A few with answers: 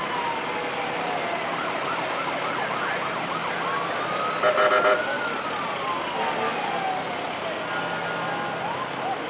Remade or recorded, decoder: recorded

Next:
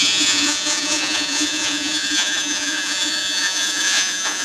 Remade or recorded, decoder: remade, vocoder, Vocos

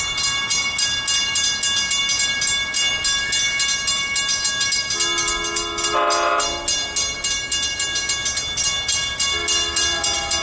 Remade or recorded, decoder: recorded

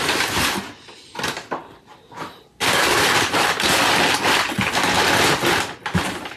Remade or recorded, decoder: recorded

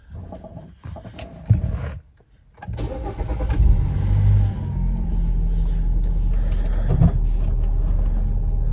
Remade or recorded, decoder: recorded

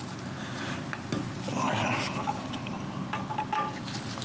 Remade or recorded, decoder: recorded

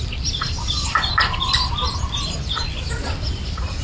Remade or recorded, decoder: remade, vocoder, BigVGAN v2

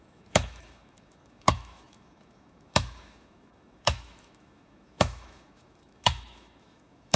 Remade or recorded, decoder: remade, autoencoder, DAC-VAE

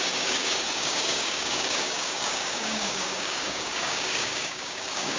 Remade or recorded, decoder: remade, codec, DAC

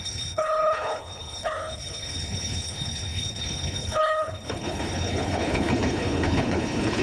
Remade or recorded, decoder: remade, codec, HILCodec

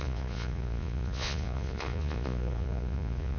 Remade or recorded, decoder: remade, vocoder, Vocos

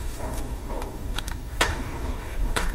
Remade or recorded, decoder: remade, codec, DAC